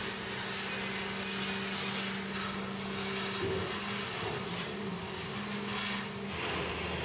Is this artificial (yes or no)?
no